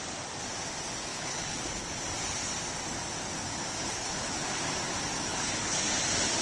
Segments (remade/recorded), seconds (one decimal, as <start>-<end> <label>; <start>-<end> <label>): 0.0-1.1 recorded; 1.1-1.9 remade; 1.9-3.8 recorded; 3.8-4.6 remade; 4.6-5.3 recorded; 5.3-5.8 remade; 5.8-6.4 recorded